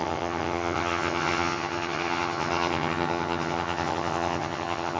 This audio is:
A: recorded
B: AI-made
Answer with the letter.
B